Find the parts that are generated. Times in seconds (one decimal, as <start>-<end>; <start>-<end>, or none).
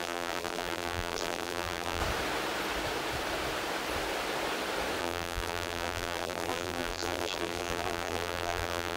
0.0-2.0; 5.0-9.0